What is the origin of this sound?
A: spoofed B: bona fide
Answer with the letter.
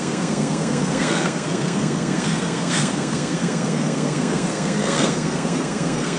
A